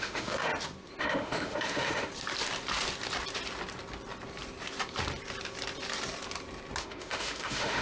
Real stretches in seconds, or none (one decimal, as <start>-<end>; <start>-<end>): 0.5-1.0; 2.1-6.8